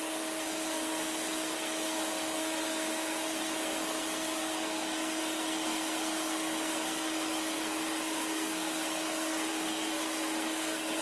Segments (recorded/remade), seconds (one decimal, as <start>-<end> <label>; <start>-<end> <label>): 0.0-11.0 remade